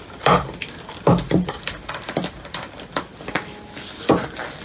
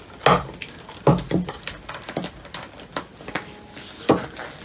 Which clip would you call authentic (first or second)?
second